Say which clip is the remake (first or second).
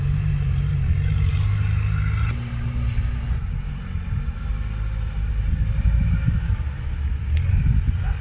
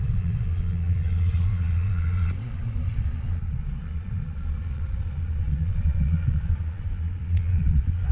second